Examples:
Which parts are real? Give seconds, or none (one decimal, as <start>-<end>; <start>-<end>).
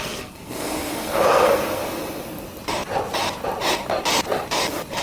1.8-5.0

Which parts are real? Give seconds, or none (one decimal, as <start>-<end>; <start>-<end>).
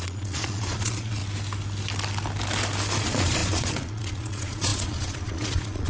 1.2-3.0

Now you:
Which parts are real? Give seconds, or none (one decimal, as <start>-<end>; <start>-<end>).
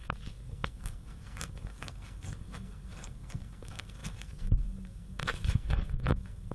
none